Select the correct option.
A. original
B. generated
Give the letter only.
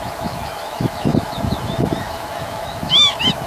B